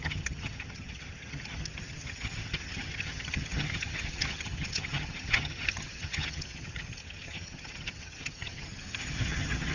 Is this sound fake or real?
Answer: fake